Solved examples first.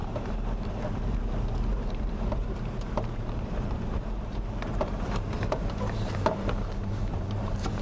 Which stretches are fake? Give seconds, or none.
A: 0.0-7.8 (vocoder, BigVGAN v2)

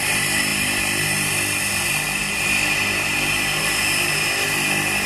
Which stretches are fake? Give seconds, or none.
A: none

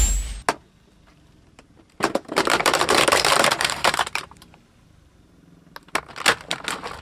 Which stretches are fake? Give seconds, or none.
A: 1.1-5.3 (vocoder, BigVGAN v2)

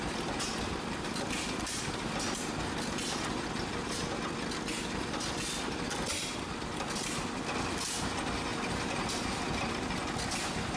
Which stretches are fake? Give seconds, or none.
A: 8.5-9.4 (vocoder, BigVGAN v2)

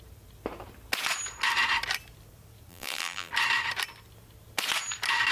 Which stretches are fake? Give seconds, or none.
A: 2.7-3.3 (vocoder, BigVGAN v2)